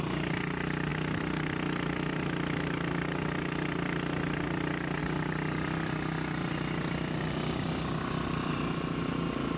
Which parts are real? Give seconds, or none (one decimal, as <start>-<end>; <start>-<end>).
0.0-9.6